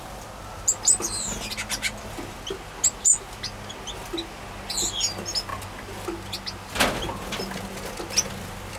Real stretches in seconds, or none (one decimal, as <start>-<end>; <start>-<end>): 0.0-8.8